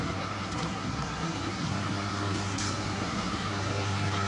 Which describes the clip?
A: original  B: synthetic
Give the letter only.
B